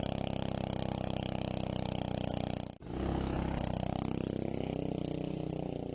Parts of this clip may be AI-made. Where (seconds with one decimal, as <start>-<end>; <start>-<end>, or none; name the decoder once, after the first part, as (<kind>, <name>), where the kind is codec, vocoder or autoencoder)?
none